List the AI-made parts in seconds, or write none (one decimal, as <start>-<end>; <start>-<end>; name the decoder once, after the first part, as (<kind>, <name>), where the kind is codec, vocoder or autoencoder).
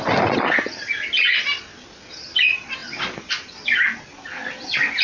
none